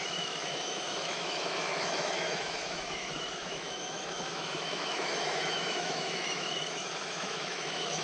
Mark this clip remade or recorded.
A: remade